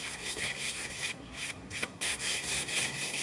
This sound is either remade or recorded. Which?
remade